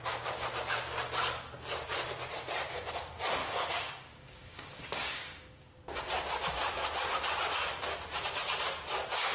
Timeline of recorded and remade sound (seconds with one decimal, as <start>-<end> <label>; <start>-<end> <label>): 0.0-3.4 recorded; 3.4-5.8 remade; 5.8-9.3 recorded